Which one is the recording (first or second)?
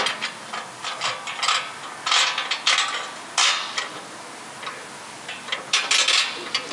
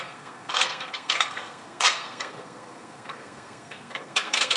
first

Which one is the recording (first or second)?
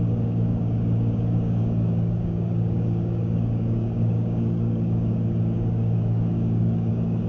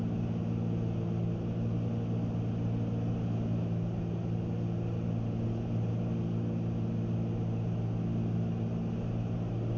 second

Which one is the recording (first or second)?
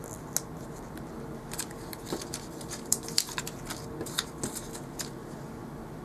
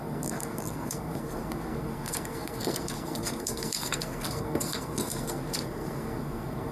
first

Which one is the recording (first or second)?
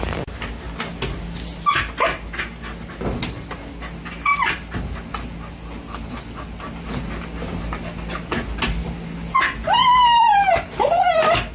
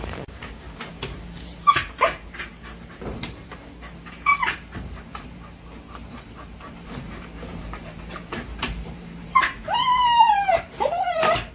first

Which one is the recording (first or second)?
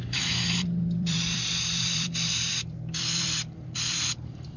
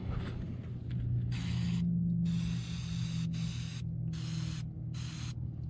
second